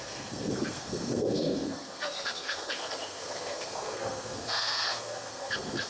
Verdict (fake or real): fake